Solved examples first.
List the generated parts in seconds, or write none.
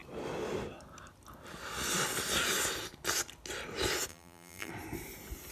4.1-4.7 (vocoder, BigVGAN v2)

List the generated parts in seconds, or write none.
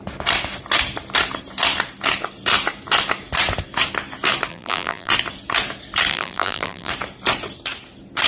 4.5-5.1 (vocoder, BigVGAN v2); 6.1-6.9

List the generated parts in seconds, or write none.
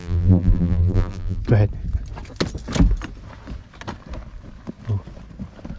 0.0-1.4 (vocoder, BigVGAN v2)